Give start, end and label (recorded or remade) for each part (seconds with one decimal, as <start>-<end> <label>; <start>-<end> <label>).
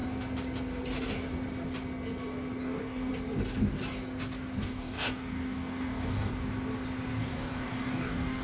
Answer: 0.0-2.6 recorded; 2.6-3.1 remade; 3.1-4.6 recorded; 4.6-6.3 remade; 6.3-7.2 recorded; 7.2-8.4 remade